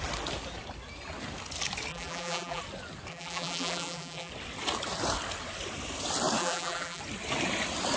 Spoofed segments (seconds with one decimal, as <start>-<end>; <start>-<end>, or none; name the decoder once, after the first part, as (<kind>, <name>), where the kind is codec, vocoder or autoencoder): 1.9-2.6 (vocoder, BigVGAN v2); 3.1-4.3; 6.4-7.0